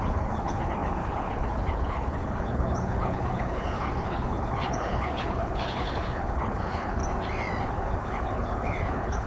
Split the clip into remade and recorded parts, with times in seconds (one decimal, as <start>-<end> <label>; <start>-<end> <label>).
0.0-7.0 remade; 7.0-7.7 recorded; 7.7-9.3 remade